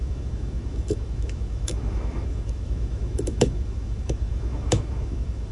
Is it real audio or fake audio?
fake